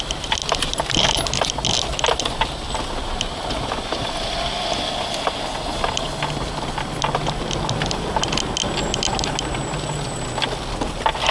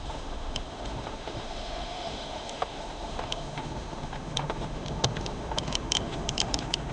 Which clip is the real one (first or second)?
first